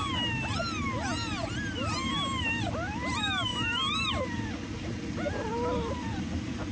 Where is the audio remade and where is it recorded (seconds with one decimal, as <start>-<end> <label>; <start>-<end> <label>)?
0.0-6.7 recorded